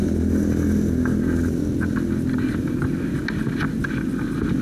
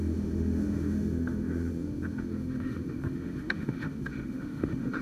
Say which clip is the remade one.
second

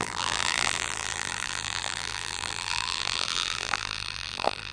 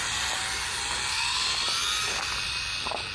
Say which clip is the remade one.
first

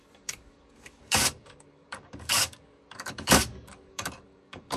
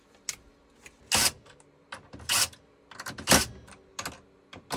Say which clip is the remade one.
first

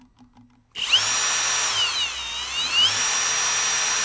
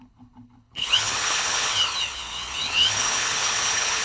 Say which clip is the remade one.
second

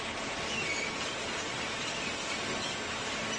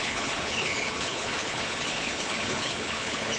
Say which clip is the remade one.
second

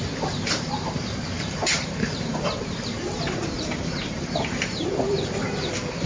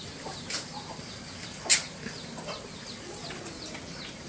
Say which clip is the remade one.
first